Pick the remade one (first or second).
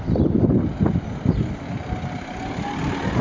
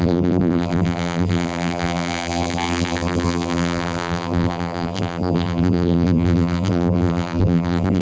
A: second